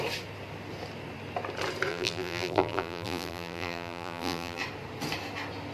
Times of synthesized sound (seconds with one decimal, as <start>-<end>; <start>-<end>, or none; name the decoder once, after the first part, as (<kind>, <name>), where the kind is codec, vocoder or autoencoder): 1.9-4.6 (vocoder, BigVGAN v2)